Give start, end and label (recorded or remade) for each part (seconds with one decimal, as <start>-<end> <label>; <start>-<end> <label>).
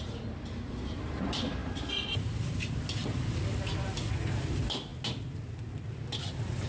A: 0.0-4.9 remade; 4.9-6.2 recorded; 6.2-6.7 remade